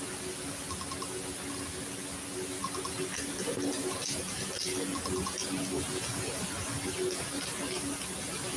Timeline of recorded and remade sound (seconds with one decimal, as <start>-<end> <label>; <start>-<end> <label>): 0.0-8.6 recorded